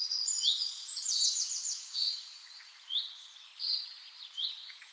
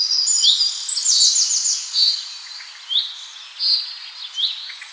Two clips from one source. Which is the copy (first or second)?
first